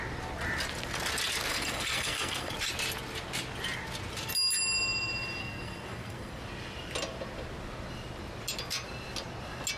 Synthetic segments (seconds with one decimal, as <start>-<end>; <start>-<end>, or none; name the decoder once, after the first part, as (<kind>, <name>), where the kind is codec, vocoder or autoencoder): 1.5-2.5 (codec, SNAC); 5.4-6.4